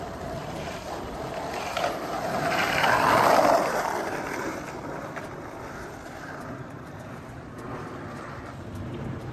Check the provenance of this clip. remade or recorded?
remade